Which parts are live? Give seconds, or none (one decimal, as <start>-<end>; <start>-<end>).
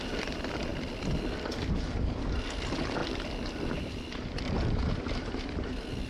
0.0-3.0; 4.4-6.1